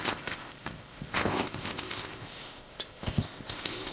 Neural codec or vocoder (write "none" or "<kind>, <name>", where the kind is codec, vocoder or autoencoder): codec, ZipCodec